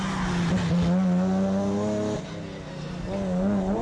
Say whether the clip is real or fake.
real